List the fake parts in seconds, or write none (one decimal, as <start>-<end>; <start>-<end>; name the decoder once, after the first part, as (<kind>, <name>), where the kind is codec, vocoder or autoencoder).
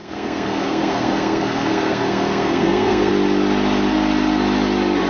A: 0.0-3.1 (codec, SNAC)